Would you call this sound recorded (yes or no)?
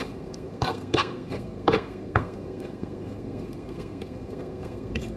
no